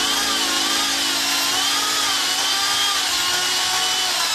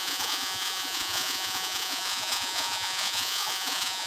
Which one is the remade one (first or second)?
second